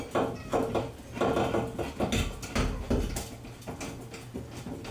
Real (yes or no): yes